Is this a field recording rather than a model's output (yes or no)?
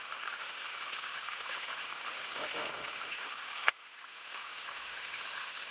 no